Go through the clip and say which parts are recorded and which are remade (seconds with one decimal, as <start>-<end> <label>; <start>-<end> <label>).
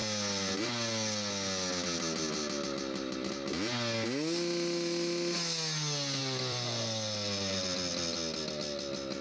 0.0-0.6 remade; 0.6-6.2 recorded; 6.2-7.6 remade; 7.6-9.2 recorded